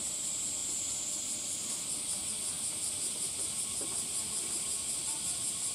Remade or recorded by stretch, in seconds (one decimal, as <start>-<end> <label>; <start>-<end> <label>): 0.0-5.7 recorded